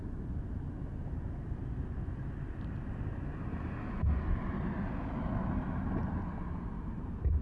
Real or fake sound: real